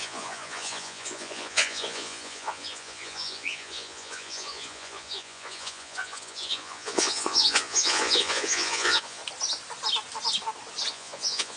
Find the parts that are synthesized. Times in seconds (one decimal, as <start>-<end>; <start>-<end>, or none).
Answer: 0.0-9.2; 10.9-11.6